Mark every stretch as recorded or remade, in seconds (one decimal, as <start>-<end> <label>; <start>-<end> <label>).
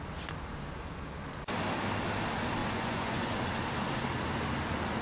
0.0-2.6 recorded; 2.6-3.4 remade; 3.4-5.0 recorded